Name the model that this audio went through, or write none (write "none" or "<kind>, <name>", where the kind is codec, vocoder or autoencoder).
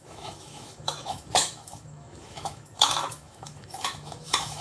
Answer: autoencoder, DAC-VAE